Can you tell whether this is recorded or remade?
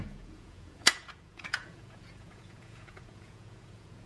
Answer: remade